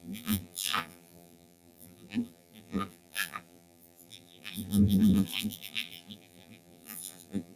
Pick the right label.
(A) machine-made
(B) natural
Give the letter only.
A